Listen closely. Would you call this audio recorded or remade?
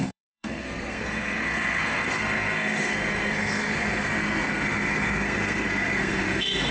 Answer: remade